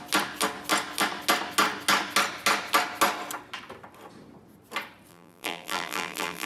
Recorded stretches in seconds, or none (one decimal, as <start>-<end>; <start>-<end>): 0.0-5.1